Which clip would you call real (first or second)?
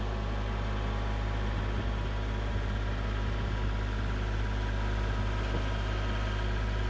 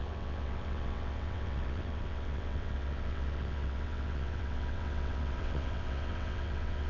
first